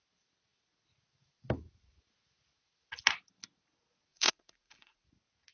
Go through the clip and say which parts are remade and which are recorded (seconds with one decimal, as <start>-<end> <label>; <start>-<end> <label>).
0.0-4.1 recorded; 4.1-5.1 remade; 5.1-5.5 recorded

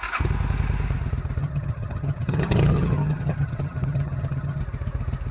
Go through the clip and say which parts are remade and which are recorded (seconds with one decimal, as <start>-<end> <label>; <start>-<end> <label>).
0.0-1.4 recorded; 1.4-4.6 remade; 4.6-5.3 recorded

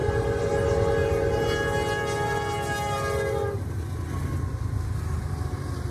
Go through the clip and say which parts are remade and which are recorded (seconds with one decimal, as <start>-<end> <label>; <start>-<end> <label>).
0.0-0.5 remade; 0.5-1.0 recorded; 1.0-3.7 remade; 3.7-5.9 recorded